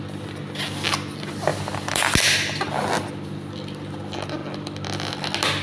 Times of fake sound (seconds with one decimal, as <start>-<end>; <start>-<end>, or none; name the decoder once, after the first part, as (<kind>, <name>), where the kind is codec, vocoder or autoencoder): none